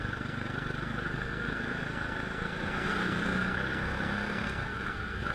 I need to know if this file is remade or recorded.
remade